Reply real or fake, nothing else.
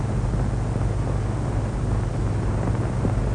real